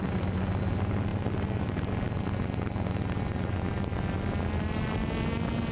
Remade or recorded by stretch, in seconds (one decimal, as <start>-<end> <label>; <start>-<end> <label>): 0.0-5.7 recorded